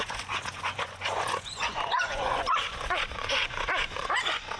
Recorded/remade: remade